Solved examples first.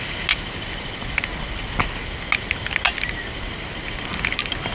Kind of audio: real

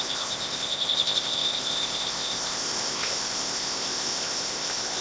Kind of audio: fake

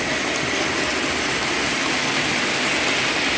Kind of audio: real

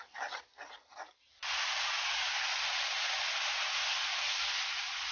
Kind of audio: real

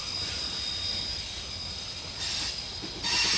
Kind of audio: real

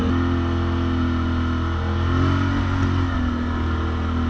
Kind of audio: real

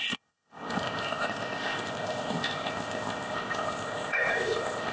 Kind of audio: fake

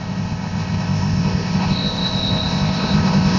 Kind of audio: fake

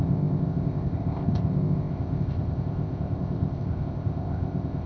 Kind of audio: fake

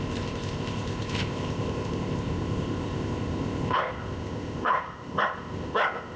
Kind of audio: fake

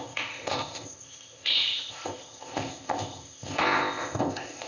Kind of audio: fake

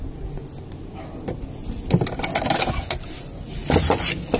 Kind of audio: real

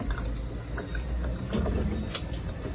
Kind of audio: real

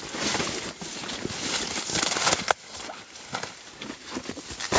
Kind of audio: real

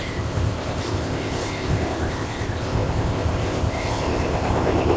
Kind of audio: fake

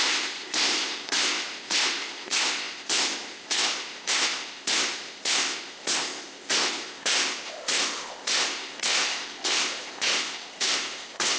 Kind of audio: fake